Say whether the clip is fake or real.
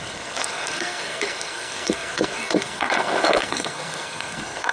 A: fake